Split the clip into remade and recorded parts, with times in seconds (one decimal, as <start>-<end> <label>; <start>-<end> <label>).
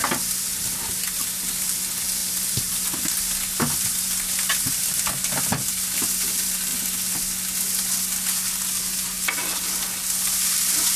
0.0-11.0 recorded